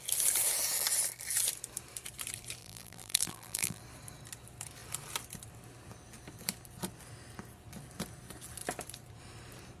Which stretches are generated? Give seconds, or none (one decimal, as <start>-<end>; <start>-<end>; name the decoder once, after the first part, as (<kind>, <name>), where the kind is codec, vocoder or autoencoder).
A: 2.6-3.8 (vocoder, BigVGAN v2)